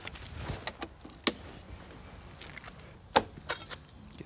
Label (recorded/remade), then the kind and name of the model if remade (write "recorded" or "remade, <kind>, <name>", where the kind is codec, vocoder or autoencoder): recorded